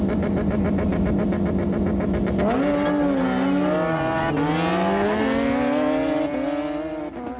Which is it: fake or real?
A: real